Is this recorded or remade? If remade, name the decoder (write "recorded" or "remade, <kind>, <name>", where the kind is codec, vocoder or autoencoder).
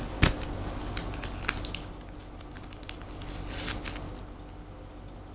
recorded